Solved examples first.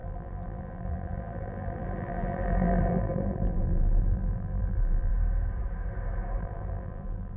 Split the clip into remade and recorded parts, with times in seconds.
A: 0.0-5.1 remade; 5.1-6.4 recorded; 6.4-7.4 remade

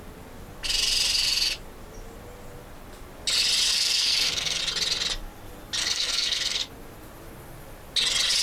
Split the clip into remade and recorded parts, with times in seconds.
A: 0.0-3.7 recorded; 3.7-4.6 remade; 4.6-5.8 recorded; 5.8-6.7 remade; 6.7-8.4 recorded

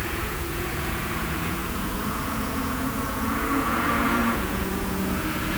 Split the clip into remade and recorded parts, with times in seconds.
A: 0.0-5.6 remade

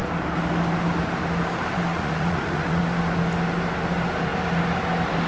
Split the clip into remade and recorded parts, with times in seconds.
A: 0.0-1.9 recorded; 1.9-2.8 remade; 2.8-5.3 recorded

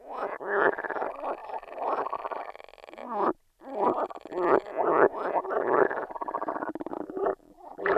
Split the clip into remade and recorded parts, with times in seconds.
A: 0.0-6.9 recorded; 6.9-8.0 remade